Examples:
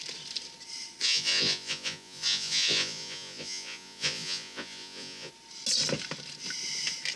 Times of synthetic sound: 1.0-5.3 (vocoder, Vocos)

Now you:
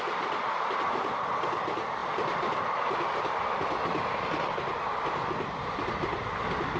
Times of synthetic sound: none

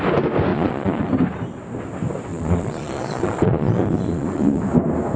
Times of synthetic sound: 0.5-1.1 (vocoder, Vocos); 2.3-4.6

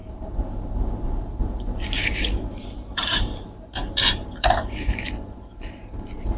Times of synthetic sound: 0.0-6.4 (vocoder, BigVGAN v2)

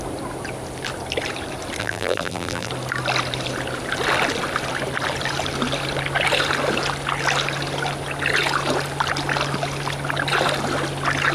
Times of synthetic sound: 1.8-2.7 (vocoder, BigVGAN v2)

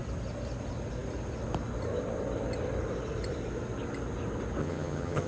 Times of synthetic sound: 4.6-5.3 (vocoder, HiFi-GAN)